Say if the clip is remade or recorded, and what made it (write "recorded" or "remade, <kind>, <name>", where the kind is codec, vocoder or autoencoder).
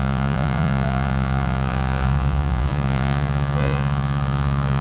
remade, vocoder, Vocos